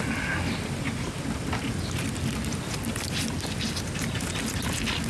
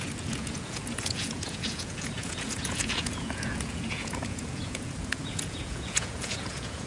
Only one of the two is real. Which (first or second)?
first